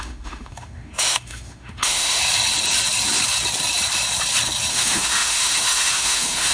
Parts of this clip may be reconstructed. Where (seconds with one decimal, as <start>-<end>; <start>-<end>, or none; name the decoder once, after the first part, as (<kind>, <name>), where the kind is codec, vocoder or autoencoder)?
0.0-2.2 (autoencoder, DAC-VAE); 4.7-6.5